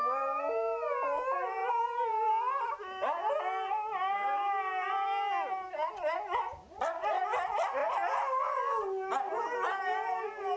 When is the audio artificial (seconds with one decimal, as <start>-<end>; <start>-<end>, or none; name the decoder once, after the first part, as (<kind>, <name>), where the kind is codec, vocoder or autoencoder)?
none